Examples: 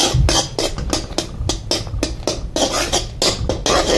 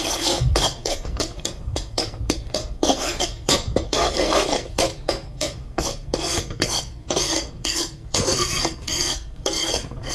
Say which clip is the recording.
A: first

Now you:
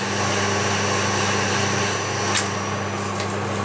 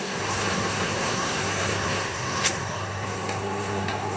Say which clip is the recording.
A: first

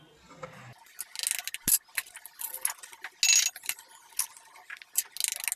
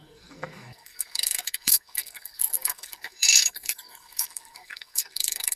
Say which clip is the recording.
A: first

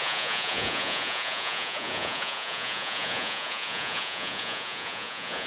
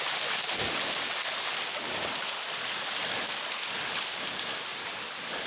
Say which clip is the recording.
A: second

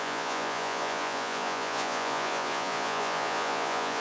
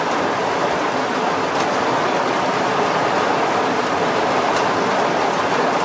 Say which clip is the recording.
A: second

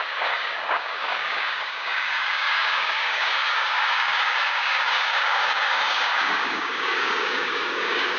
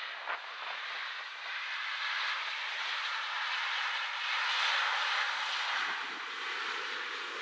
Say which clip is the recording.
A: second